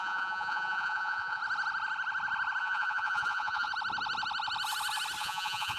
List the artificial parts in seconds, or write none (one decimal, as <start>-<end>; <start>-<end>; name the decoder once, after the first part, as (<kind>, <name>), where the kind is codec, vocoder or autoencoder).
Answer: 0.0-1.4 (vocoder, Vocos); 2.6-3.7; 5.2-5.8